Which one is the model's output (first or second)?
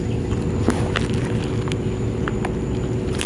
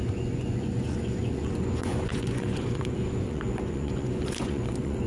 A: second